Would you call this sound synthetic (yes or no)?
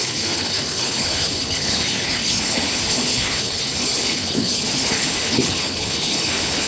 yes